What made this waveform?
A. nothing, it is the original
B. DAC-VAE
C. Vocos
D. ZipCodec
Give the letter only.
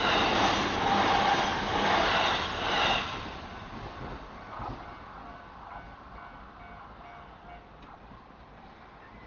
A